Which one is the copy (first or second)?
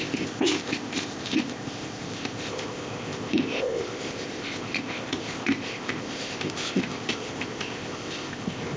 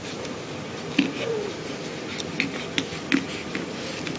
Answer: first